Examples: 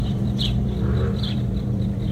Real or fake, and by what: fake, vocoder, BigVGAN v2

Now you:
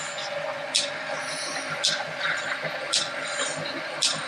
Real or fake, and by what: fake, vocoder, BigVGAN v2